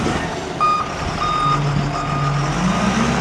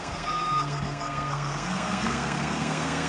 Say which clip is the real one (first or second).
first